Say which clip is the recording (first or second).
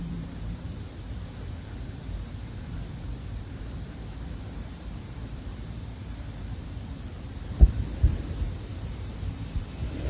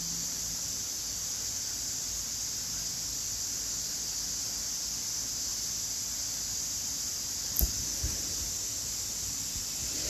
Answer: second